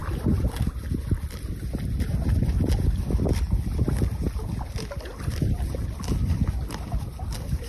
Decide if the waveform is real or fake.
real